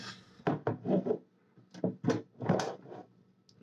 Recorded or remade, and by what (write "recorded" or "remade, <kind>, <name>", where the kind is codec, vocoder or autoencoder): recorded